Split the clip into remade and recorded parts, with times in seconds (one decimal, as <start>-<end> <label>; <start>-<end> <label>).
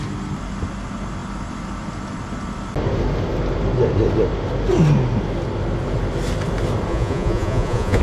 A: 0.0-6.9 recorded; 6.9-8.0 remade